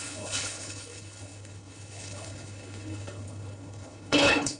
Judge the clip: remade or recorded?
remade